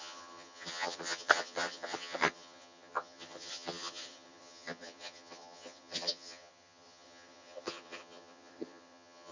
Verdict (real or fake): fake